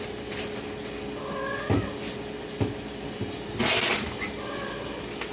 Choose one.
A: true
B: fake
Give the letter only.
A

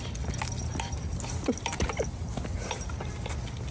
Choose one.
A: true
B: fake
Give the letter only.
A